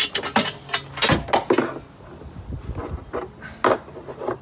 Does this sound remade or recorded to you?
recorded